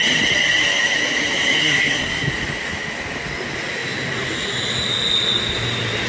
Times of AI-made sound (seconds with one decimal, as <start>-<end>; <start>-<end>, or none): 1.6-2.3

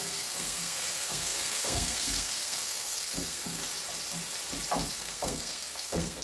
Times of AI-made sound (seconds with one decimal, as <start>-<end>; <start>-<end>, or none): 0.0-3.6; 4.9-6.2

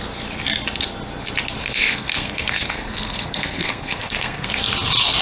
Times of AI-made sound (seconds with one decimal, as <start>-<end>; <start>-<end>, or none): 1.6-4.5